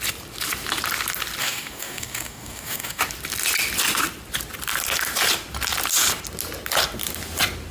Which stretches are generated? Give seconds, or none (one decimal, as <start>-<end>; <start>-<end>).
1.4-3.0